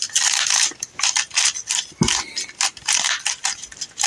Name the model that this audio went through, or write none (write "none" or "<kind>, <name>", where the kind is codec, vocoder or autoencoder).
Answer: none